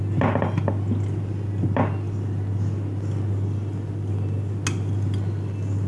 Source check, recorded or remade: recorded